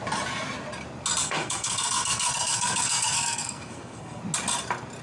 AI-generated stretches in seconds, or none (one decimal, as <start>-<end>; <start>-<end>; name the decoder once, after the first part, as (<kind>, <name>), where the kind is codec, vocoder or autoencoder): 1.2-4.2 (codec, SNAC)